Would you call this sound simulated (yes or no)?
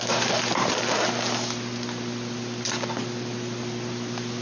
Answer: no